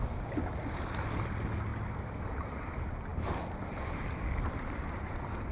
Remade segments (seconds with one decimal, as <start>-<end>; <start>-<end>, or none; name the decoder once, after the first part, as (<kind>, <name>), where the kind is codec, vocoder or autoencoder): none